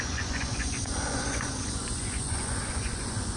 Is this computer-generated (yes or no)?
yes